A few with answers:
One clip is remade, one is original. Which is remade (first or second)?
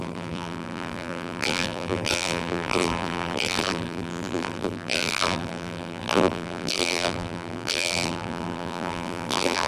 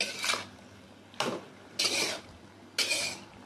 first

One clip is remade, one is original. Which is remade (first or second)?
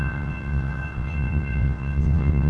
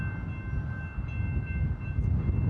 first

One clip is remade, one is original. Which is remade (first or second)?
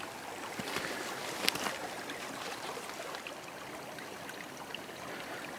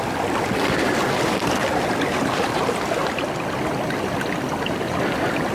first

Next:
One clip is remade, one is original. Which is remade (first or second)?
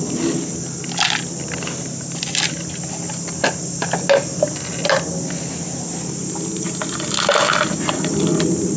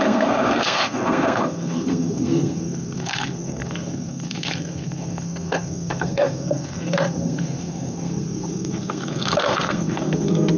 second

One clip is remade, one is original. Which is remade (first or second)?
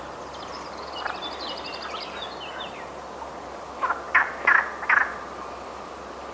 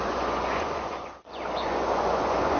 second